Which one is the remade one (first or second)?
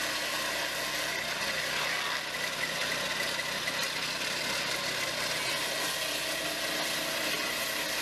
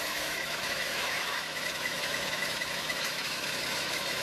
second